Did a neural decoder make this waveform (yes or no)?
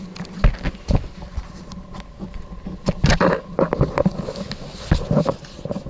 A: no